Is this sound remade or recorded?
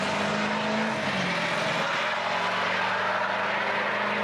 recorded